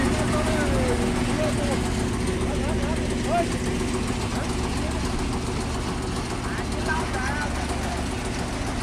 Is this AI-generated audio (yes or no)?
no